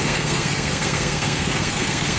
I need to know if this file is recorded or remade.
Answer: remade